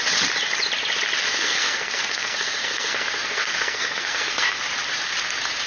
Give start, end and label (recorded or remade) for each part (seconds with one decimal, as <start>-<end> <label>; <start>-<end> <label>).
0.0-1.2 recorded; 1.2-4.6 remade; 4.6-5.7 recorded